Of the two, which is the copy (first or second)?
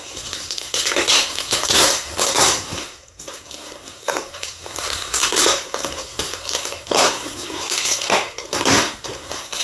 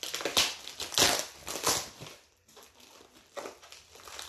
first